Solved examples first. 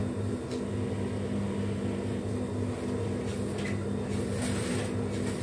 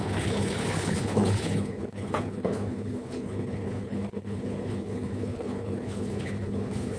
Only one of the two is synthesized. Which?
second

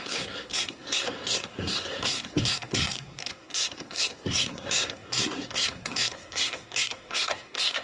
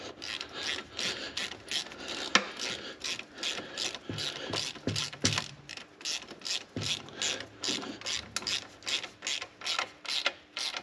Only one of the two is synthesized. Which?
first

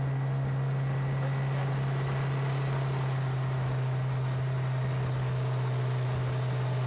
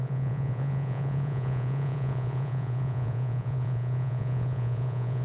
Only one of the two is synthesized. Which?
second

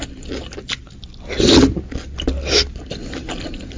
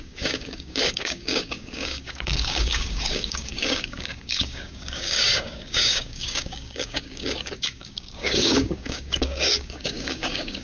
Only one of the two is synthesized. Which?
second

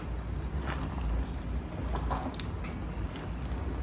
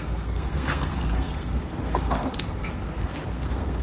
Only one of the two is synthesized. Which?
second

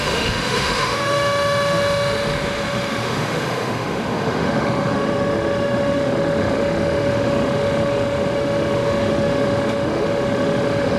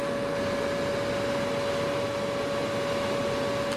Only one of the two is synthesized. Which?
first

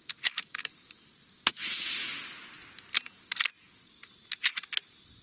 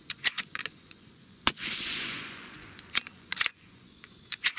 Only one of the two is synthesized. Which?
second